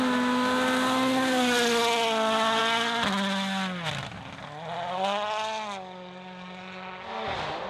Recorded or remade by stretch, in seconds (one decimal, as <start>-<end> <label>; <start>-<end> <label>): 0.0-7.7 recorded